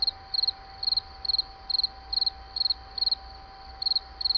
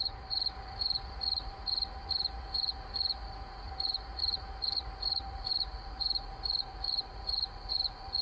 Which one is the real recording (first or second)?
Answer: first